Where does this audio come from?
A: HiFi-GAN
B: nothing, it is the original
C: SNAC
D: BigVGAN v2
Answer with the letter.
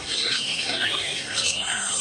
C